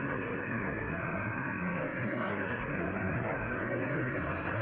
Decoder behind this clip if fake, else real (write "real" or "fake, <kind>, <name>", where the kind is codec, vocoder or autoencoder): fake, codec, SNAC